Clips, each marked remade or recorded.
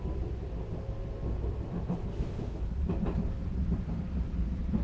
recorded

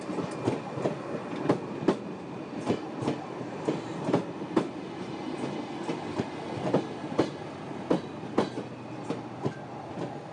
recorded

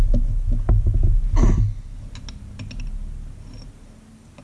recorded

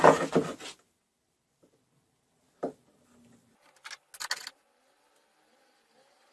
recorded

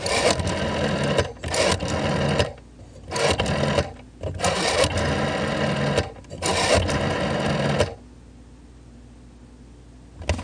recorded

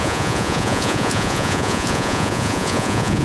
remade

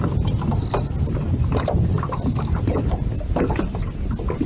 recorded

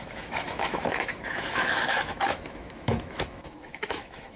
remade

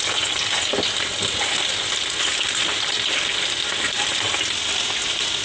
recorded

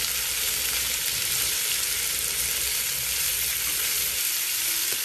recorded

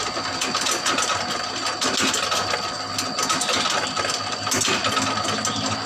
recorded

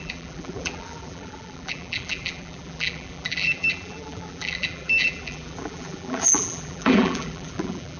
remade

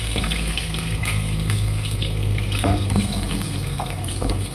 remade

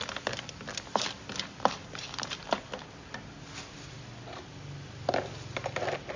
recorded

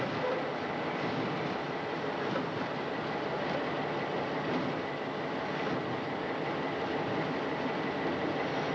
recorded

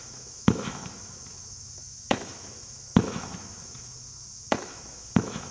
remade